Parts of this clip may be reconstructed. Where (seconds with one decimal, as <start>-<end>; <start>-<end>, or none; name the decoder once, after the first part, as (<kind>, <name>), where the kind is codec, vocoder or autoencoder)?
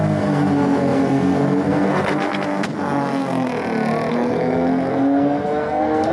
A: 0.0-3.5 (codec, SNAC); 4.1-6.1